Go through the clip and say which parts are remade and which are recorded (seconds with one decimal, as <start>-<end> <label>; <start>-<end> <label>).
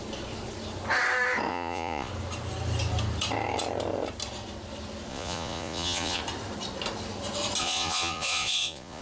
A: 0.0-1.5 recorded; 1.5-2.1 remade; 2.1-5.1 recorded; 5.1-6.2 remade; 6.2-7.6 recorded; 7.6-9.0 remade